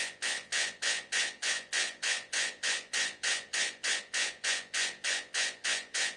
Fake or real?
fake